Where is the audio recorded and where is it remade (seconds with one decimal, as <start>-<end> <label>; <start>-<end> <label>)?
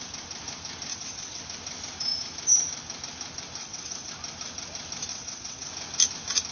0.0-0.9 recorded; 0.9-1.4 remade; 1.4-3.6 recorded; 3.6-4.1 remade; 4.1-5.1 recorded; 5.1-5.7 remade; 5.7-6.5 recorded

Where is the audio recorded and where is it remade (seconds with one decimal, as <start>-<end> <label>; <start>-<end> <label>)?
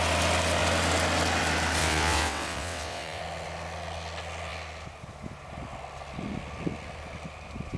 0.0-1.8 recorded; 1.8-3.2 remade; 3.2-7.8 recorded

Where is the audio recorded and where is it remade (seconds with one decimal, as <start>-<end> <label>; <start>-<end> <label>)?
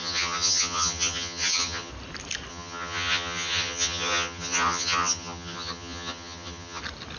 0.0-1.9 remade; 1.9-2.5 recorded; 2.5-6.8 remade; 6.8-7.2 recorded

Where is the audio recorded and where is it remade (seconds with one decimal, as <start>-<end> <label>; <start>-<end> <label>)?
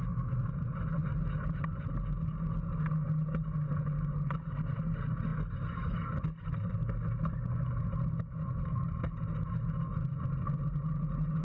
0.0-11.4 recorded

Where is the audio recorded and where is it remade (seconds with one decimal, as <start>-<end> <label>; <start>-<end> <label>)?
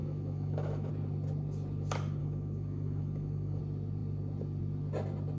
0.0-0.9 remade; 0.9-2.2 recorded; 2.2-3.6 remade; 3.6-5.4 recorded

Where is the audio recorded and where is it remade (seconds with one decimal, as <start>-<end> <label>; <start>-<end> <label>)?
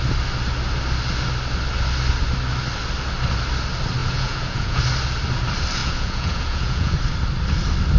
0.0-4.0 recorded; 4.0-4.8 remade; 4.8-5.8 recorded; 5.8-7.0 remade; 7.0-8.0 recorded